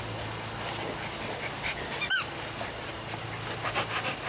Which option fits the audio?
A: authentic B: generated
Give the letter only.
A